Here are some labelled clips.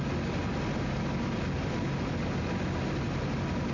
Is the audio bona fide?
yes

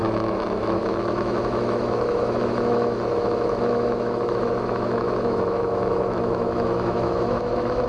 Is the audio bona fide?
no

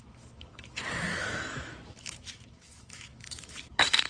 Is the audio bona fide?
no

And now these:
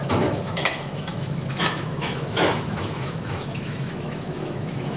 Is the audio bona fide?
no